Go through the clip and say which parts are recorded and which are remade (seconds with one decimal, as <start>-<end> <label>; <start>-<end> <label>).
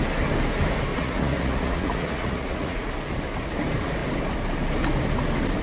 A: 0.0-0.9 recorded; 0.9-2.9 remade; 2.9-5.6 recorded